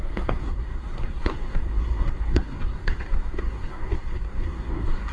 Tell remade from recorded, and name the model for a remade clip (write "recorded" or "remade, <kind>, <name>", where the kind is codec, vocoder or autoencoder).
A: remade, codec, SNAC